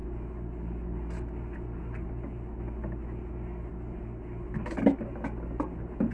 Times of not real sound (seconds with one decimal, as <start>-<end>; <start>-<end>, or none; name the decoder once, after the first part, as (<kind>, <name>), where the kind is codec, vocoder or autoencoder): none